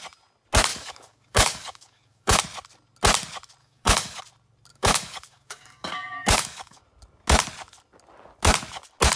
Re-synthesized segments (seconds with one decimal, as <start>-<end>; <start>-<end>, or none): 0.7-2.4; 3.6-4.2; 4.7-6.8